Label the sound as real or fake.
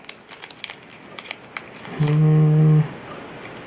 real